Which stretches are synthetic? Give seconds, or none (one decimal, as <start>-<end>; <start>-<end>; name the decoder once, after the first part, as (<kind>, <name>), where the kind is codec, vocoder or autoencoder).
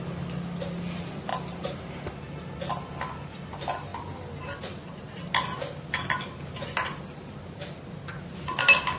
none